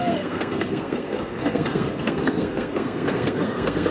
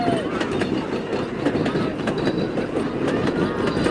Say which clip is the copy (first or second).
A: first